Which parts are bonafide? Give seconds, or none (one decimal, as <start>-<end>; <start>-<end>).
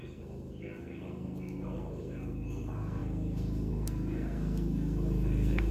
none